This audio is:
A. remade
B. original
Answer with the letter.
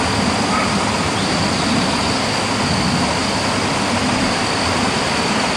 B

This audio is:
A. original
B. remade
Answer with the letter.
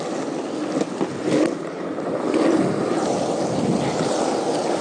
A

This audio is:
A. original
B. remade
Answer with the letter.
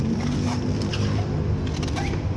A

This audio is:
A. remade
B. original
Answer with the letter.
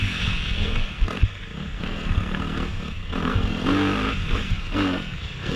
A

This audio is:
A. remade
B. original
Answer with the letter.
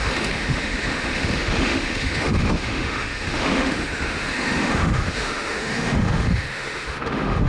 A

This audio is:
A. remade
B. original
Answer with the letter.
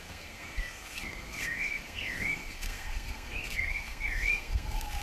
A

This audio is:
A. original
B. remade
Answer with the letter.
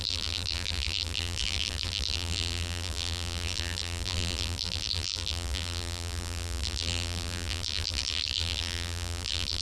B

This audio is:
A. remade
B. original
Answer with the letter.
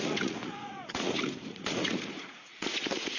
A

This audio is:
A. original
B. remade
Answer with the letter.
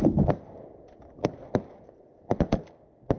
A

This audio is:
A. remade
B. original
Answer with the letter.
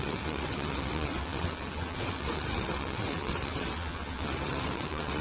A